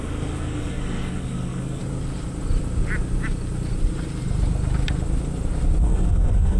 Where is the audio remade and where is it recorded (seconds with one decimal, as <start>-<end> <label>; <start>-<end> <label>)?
0.0-1.8 remade; 1.8-5.8 recorded; 5.8-6.6 remade